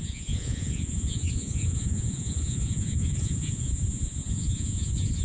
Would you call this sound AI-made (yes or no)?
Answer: yes